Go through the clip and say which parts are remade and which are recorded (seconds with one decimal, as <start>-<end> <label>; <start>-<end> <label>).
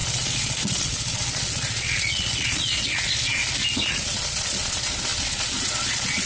0.0-3.4 remade; 3.4-3.9 recorded; 3.9-6.3 remade